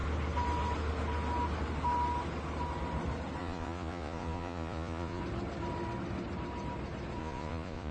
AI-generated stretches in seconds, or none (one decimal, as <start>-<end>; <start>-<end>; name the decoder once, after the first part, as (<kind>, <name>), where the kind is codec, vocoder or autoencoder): 3.4-5.2 (vocoder, Vocos); 7.2-7.9